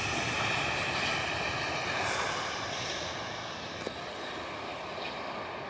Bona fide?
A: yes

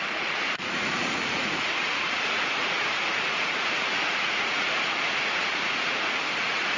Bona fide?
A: no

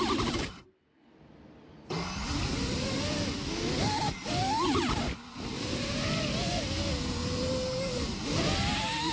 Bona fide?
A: yes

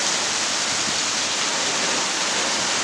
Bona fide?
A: yes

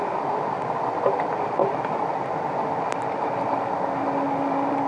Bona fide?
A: yes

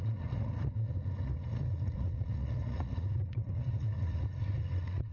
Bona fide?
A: no